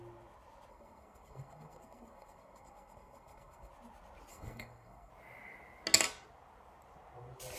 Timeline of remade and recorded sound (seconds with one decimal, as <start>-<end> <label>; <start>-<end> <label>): 0.0-0.7 recorded; 0.7-3.7 remade; 3.7-4.3 recorded; 4.3-5.1 remade; 5.1-7.6 recorded